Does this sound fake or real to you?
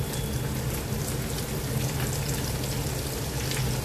real